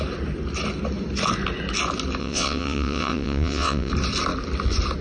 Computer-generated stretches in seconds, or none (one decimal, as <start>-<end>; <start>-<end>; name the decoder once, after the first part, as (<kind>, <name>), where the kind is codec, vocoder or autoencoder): 2.2-3.9 (vocoder, WaveNeXt)